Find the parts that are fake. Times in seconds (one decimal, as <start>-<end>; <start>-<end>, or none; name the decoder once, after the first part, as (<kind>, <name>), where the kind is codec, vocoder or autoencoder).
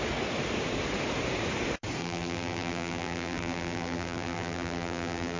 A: 2.0-5.4 (vocoder, BigVGAN v2)